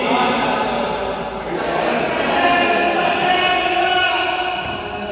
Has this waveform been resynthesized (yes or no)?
no